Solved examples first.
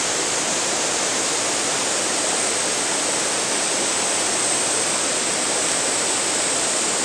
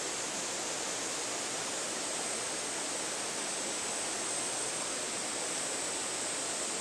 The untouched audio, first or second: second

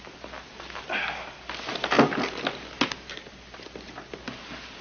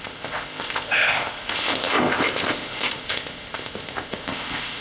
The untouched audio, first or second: first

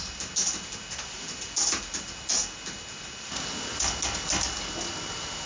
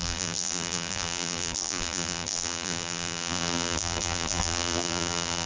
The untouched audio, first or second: first